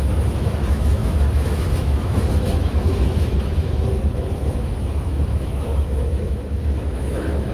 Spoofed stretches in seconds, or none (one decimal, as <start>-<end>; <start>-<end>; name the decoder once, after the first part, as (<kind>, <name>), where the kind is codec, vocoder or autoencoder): 0.0-7.5 (autoencoder, DAC-VAE)